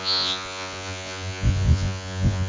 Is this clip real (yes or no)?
no